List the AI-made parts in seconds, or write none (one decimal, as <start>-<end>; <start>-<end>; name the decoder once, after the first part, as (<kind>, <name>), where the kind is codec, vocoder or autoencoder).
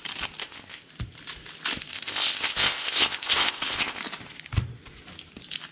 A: 0.4-0.9 (codec, ZipCodec); 1.9-4.0